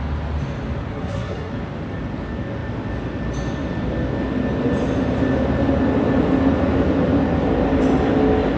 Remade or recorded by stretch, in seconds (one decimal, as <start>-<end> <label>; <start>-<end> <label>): 0.0-0.9 recorded; 0.9-1.5 remade; 1.5-8.6 recorded